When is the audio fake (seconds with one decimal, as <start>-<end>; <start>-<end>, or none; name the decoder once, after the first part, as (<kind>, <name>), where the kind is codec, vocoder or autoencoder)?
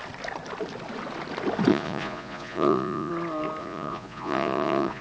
1.7-3.1 (vocoder, Vocos); 3.6-5.0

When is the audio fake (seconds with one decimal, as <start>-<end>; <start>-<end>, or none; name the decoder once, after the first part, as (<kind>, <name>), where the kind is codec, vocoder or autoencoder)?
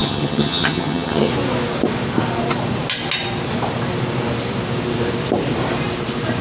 0.0-1.3 (vocoder, HiFi-GAN)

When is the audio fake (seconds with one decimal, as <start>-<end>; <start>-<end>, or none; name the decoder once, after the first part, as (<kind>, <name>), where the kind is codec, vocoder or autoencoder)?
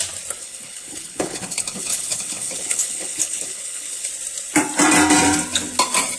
0.4-4.1 (codec, HILCodec)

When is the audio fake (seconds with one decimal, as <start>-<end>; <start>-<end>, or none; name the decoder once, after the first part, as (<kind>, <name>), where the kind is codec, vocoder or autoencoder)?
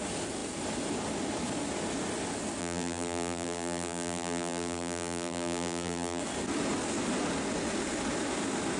2.6-6.2 (vocoder, BigVGAN v2)